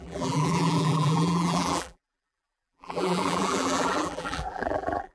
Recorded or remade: remade